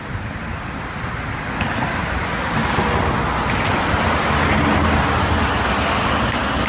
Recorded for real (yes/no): yes